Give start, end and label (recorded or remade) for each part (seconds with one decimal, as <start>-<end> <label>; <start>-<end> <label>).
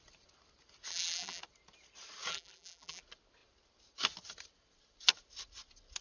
0.0-0.9 recorded; 0.9-1.4 remade; 1.4-2.3 recorded; 2.3-3.0 remade; 3.0-6.0 recorded